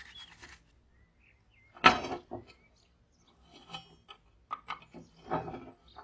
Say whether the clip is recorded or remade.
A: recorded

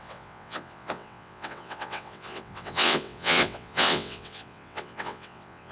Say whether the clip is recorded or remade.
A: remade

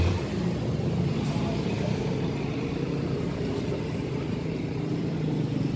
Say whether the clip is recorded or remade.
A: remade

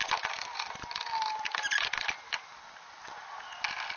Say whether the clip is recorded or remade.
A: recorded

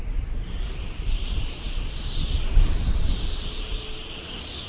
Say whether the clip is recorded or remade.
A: recorded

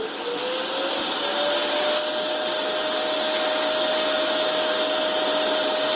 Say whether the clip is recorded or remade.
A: recorded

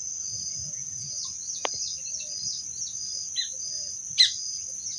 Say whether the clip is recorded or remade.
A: recorded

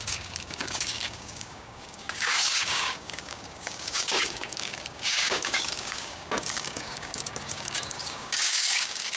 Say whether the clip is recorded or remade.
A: remade